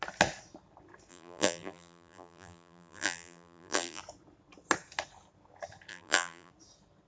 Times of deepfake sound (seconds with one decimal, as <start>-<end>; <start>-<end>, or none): 1.1-4.0; 5.9-6.5